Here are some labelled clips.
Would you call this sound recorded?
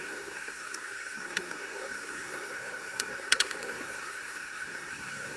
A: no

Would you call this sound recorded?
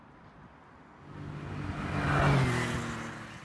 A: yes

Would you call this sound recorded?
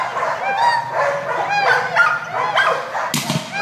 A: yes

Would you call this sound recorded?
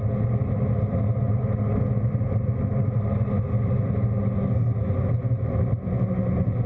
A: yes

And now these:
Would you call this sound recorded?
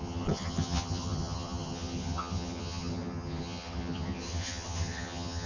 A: no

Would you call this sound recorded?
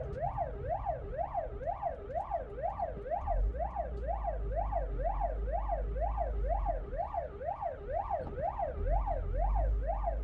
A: yes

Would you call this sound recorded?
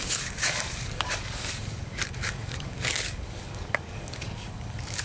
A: no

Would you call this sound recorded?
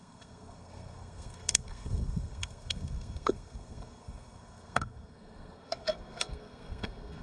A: no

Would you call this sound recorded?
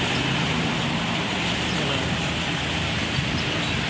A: yes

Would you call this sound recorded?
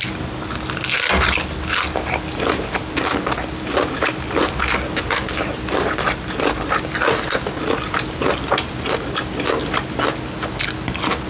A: yes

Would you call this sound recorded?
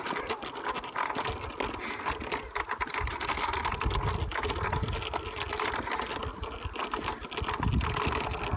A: yes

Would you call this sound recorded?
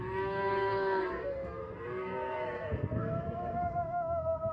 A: no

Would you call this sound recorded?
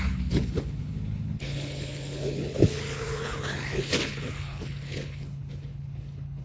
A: no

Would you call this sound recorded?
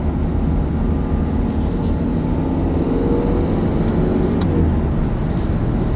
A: yes